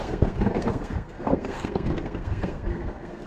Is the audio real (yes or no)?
no